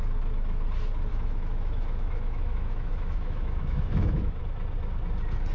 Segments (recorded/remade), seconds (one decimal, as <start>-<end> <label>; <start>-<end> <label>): 0.0-1.1 recorded; 1.1-4.4 remade; 4.4-5.5 recorded